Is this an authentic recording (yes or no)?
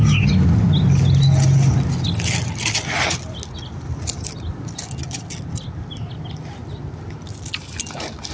yes